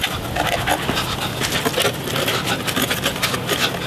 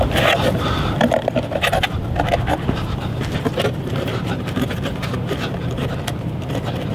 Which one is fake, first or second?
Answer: second